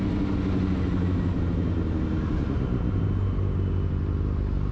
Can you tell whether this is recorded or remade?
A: recorded